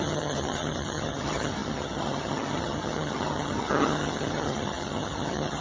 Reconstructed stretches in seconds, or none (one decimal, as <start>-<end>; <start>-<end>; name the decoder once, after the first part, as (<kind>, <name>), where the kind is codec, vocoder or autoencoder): 0.0-5.6 (vocoder, HiFi-GAN)